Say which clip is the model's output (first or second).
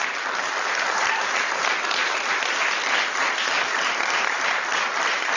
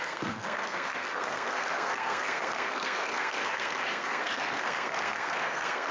second